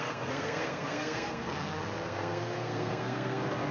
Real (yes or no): no